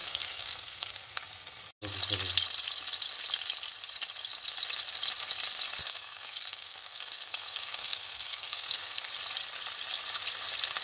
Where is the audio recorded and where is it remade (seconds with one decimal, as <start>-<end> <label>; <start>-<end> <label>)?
0.0-1.2 remade; 1.2-5.8 recorded; 5.8-9.1 remade; 9.1-10.8 recorded

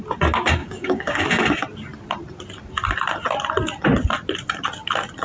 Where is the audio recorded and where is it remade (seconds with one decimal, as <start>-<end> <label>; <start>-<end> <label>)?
0.0-0.6 recorded; 0.6-1.2 remade; 1.2-5.2 recorded

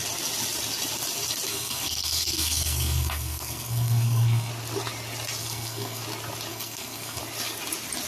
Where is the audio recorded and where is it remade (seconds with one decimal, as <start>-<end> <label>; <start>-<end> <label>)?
0.0-1.5 recorded; 1.5-4.5 remade; 4.5-5.4 recorded; 5.4-6.0 remade; 6.0-6.5 recorded; 6.5-7.2 remade; 7.2-8.1 recorded

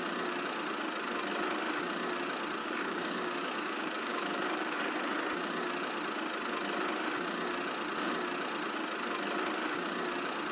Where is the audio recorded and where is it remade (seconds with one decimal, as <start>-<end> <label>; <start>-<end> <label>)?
0.0-2.6 recorded; 2.6-4.8 remade; 4.8-10.5 recorded

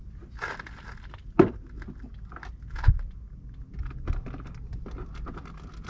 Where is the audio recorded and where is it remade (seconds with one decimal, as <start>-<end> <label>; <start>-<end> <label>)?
0.0-5.9 recorded

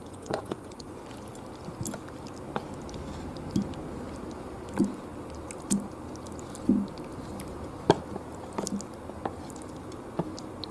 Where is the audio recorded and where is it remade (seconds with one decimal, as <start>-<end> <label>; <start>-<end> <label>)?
0.0-1.0 remade; 1.0-10.7 recorded

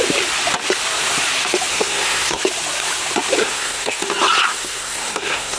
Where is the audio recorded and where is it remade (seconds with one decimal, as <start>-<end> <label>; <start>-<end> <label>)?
0.0-1.7 recorded; 1.7-2.4 remade; 2.4-3.4 recorded; 3.4-4.0 remade; 4.0-4.5 recorded; 4.5-5.6 remade

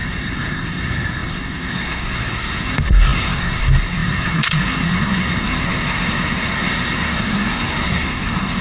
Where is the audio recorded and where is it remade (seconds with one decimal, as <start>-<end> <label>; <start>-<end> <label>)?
0.0-8.6 remade